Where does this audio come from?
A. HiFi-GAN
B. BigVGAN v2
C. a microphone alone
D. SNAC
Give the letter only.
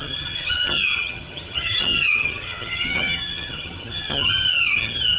A